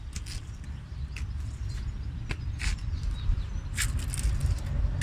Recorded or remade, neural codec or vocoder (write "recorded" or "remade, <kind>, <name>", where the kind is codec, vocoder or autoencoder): recorded